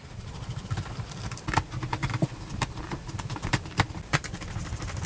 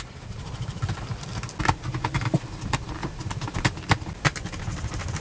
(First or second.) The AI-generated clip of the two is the first